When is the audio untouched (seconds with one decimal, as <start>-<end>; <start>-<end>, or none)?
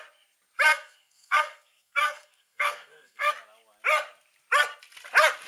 0.0-0.7; 3.3-5.5